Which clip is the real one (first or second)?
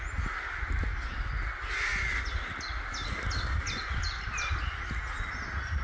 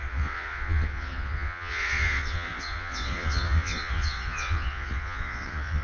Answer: first